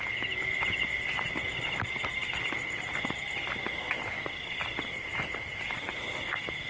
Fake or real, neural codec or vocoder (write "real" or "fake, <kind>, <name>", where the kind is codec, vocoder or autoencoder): real